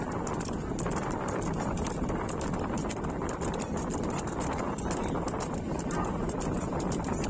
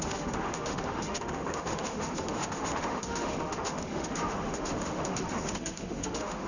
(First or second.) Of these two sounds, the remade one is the second